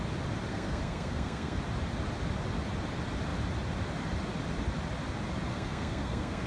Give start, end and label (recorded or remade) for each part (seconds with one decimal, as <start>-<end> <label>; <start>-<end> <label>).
0.0-0.5 recorded; 0.5-1.6 remade; 1.6-5.5 recorded; 5.5-6.5 remade